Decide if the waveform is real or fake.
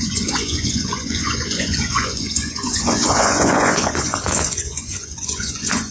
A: fake